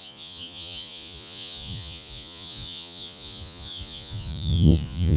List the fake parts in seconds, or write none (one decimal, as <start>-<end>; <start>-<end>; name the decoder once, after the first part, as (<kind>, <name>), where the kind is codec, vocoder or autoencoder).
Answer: 0.0-5.2 (vocoder, Vocos)

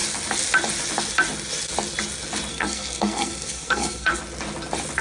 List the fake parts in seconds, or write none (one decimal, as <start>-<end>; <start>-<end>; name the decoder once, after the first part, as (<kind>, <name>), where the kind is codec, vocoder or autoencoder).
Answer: 2.5-4.2 (codec, SNAC)

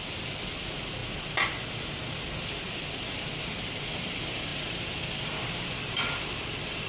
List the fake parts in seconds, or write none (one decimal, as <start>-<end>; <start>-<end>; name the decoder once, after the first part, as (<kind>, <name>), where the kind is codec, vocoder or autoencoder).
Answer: none

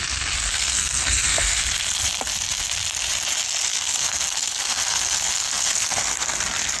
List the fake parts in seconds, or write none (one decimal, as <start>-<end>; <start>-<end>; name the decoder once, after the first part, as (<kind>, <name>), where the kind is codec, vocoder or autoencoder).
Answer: 0.5-1.6 (codec, SNAC); 3.6-6.3

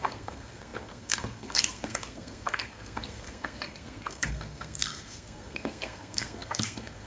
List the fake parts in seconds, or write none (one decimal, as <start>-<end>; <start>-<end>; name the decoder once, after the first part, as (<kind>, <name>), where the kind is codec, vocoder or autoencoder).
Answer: 0.0-7.1 (codec, SNAC)

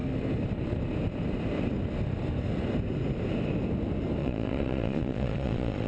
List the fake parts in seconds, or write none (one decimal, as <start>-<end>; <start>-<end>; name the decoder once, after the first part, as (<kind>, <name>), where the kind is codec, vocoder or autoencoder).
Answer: 4.2-5.9 (vocoder, Vocos)